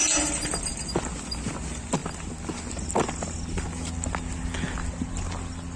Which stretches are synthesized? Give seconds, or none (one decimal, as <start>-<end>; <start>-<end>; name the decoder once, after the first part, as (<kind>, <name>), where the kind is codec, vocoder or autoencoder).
none